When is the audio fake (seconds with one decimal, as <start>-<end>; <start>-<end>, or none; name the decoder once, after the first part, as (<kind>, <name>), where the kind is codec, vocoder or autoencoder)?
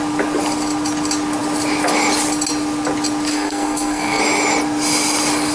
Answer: 3.3-4.2 (codec, SNAC)